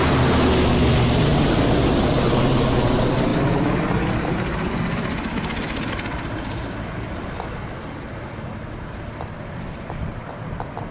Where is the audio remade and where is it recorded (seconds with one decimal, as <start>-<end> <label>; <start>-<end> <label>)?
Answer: 0.0-10.9 recorded